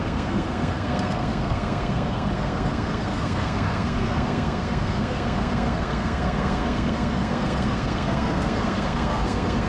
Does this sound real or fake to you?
fake